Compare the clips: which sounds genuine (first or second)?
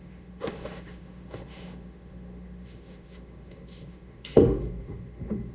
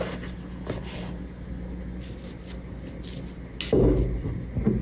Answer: second